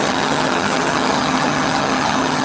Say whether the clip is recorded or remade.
remade